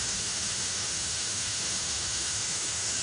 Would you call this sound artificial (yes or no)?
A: yes